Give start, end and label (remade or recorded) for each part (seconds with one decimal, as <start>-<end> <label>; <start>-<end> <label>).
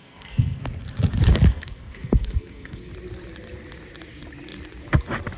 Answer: 0.0-0.6 remade; 0.6-1.5 recorded; 1.5-2.9 remade; 2.9-5.4 recorded